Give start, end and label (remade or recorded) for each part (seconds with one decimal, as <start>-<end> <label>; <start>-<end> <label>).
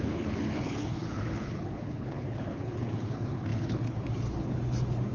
0.0-5.1 remade